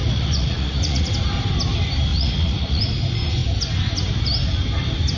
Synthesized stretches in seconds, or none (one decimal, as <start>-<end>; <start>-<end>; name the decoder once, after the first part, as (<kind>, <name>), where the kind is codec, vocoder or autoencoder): 0.0-1.1 (vocoder, Vocos); 2.1-2.8